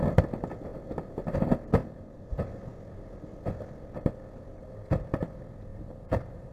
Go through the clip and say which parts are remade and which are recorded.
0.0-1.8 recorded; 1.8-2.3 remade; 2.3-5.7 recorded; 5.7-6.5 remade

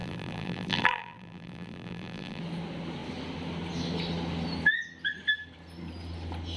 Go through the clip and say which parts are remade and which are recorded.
0.0-2.4 remade; 2.4-6.6 recorded

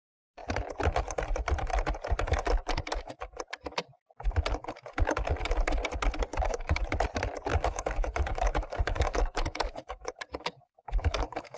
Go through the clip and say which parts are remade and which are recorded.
0.0-6.3 recorded; 6.3-6.8 remade; 6.8-7.5 recorded; 7.5-11.6 remade

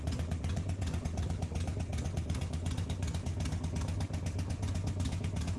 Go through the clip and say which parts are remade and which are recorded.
0.0-3.3 remade; 3.3-4.5 recorded; 4.5-5.6 remade